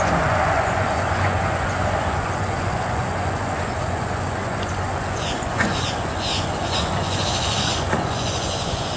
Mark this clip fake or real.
fake